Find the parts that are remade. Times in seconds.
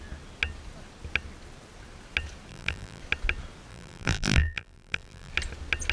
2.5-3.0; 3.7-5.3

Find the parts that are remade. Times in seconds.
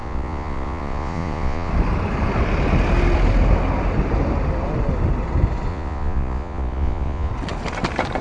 0.0-1.7; 5.7-7.3